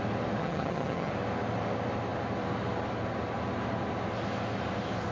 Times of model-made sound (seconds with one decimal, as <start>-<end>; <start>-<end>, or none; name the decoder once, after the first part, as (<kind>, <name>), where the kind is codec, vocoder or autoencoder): 0.4-1.1 (vocoder, HiFi-GAN)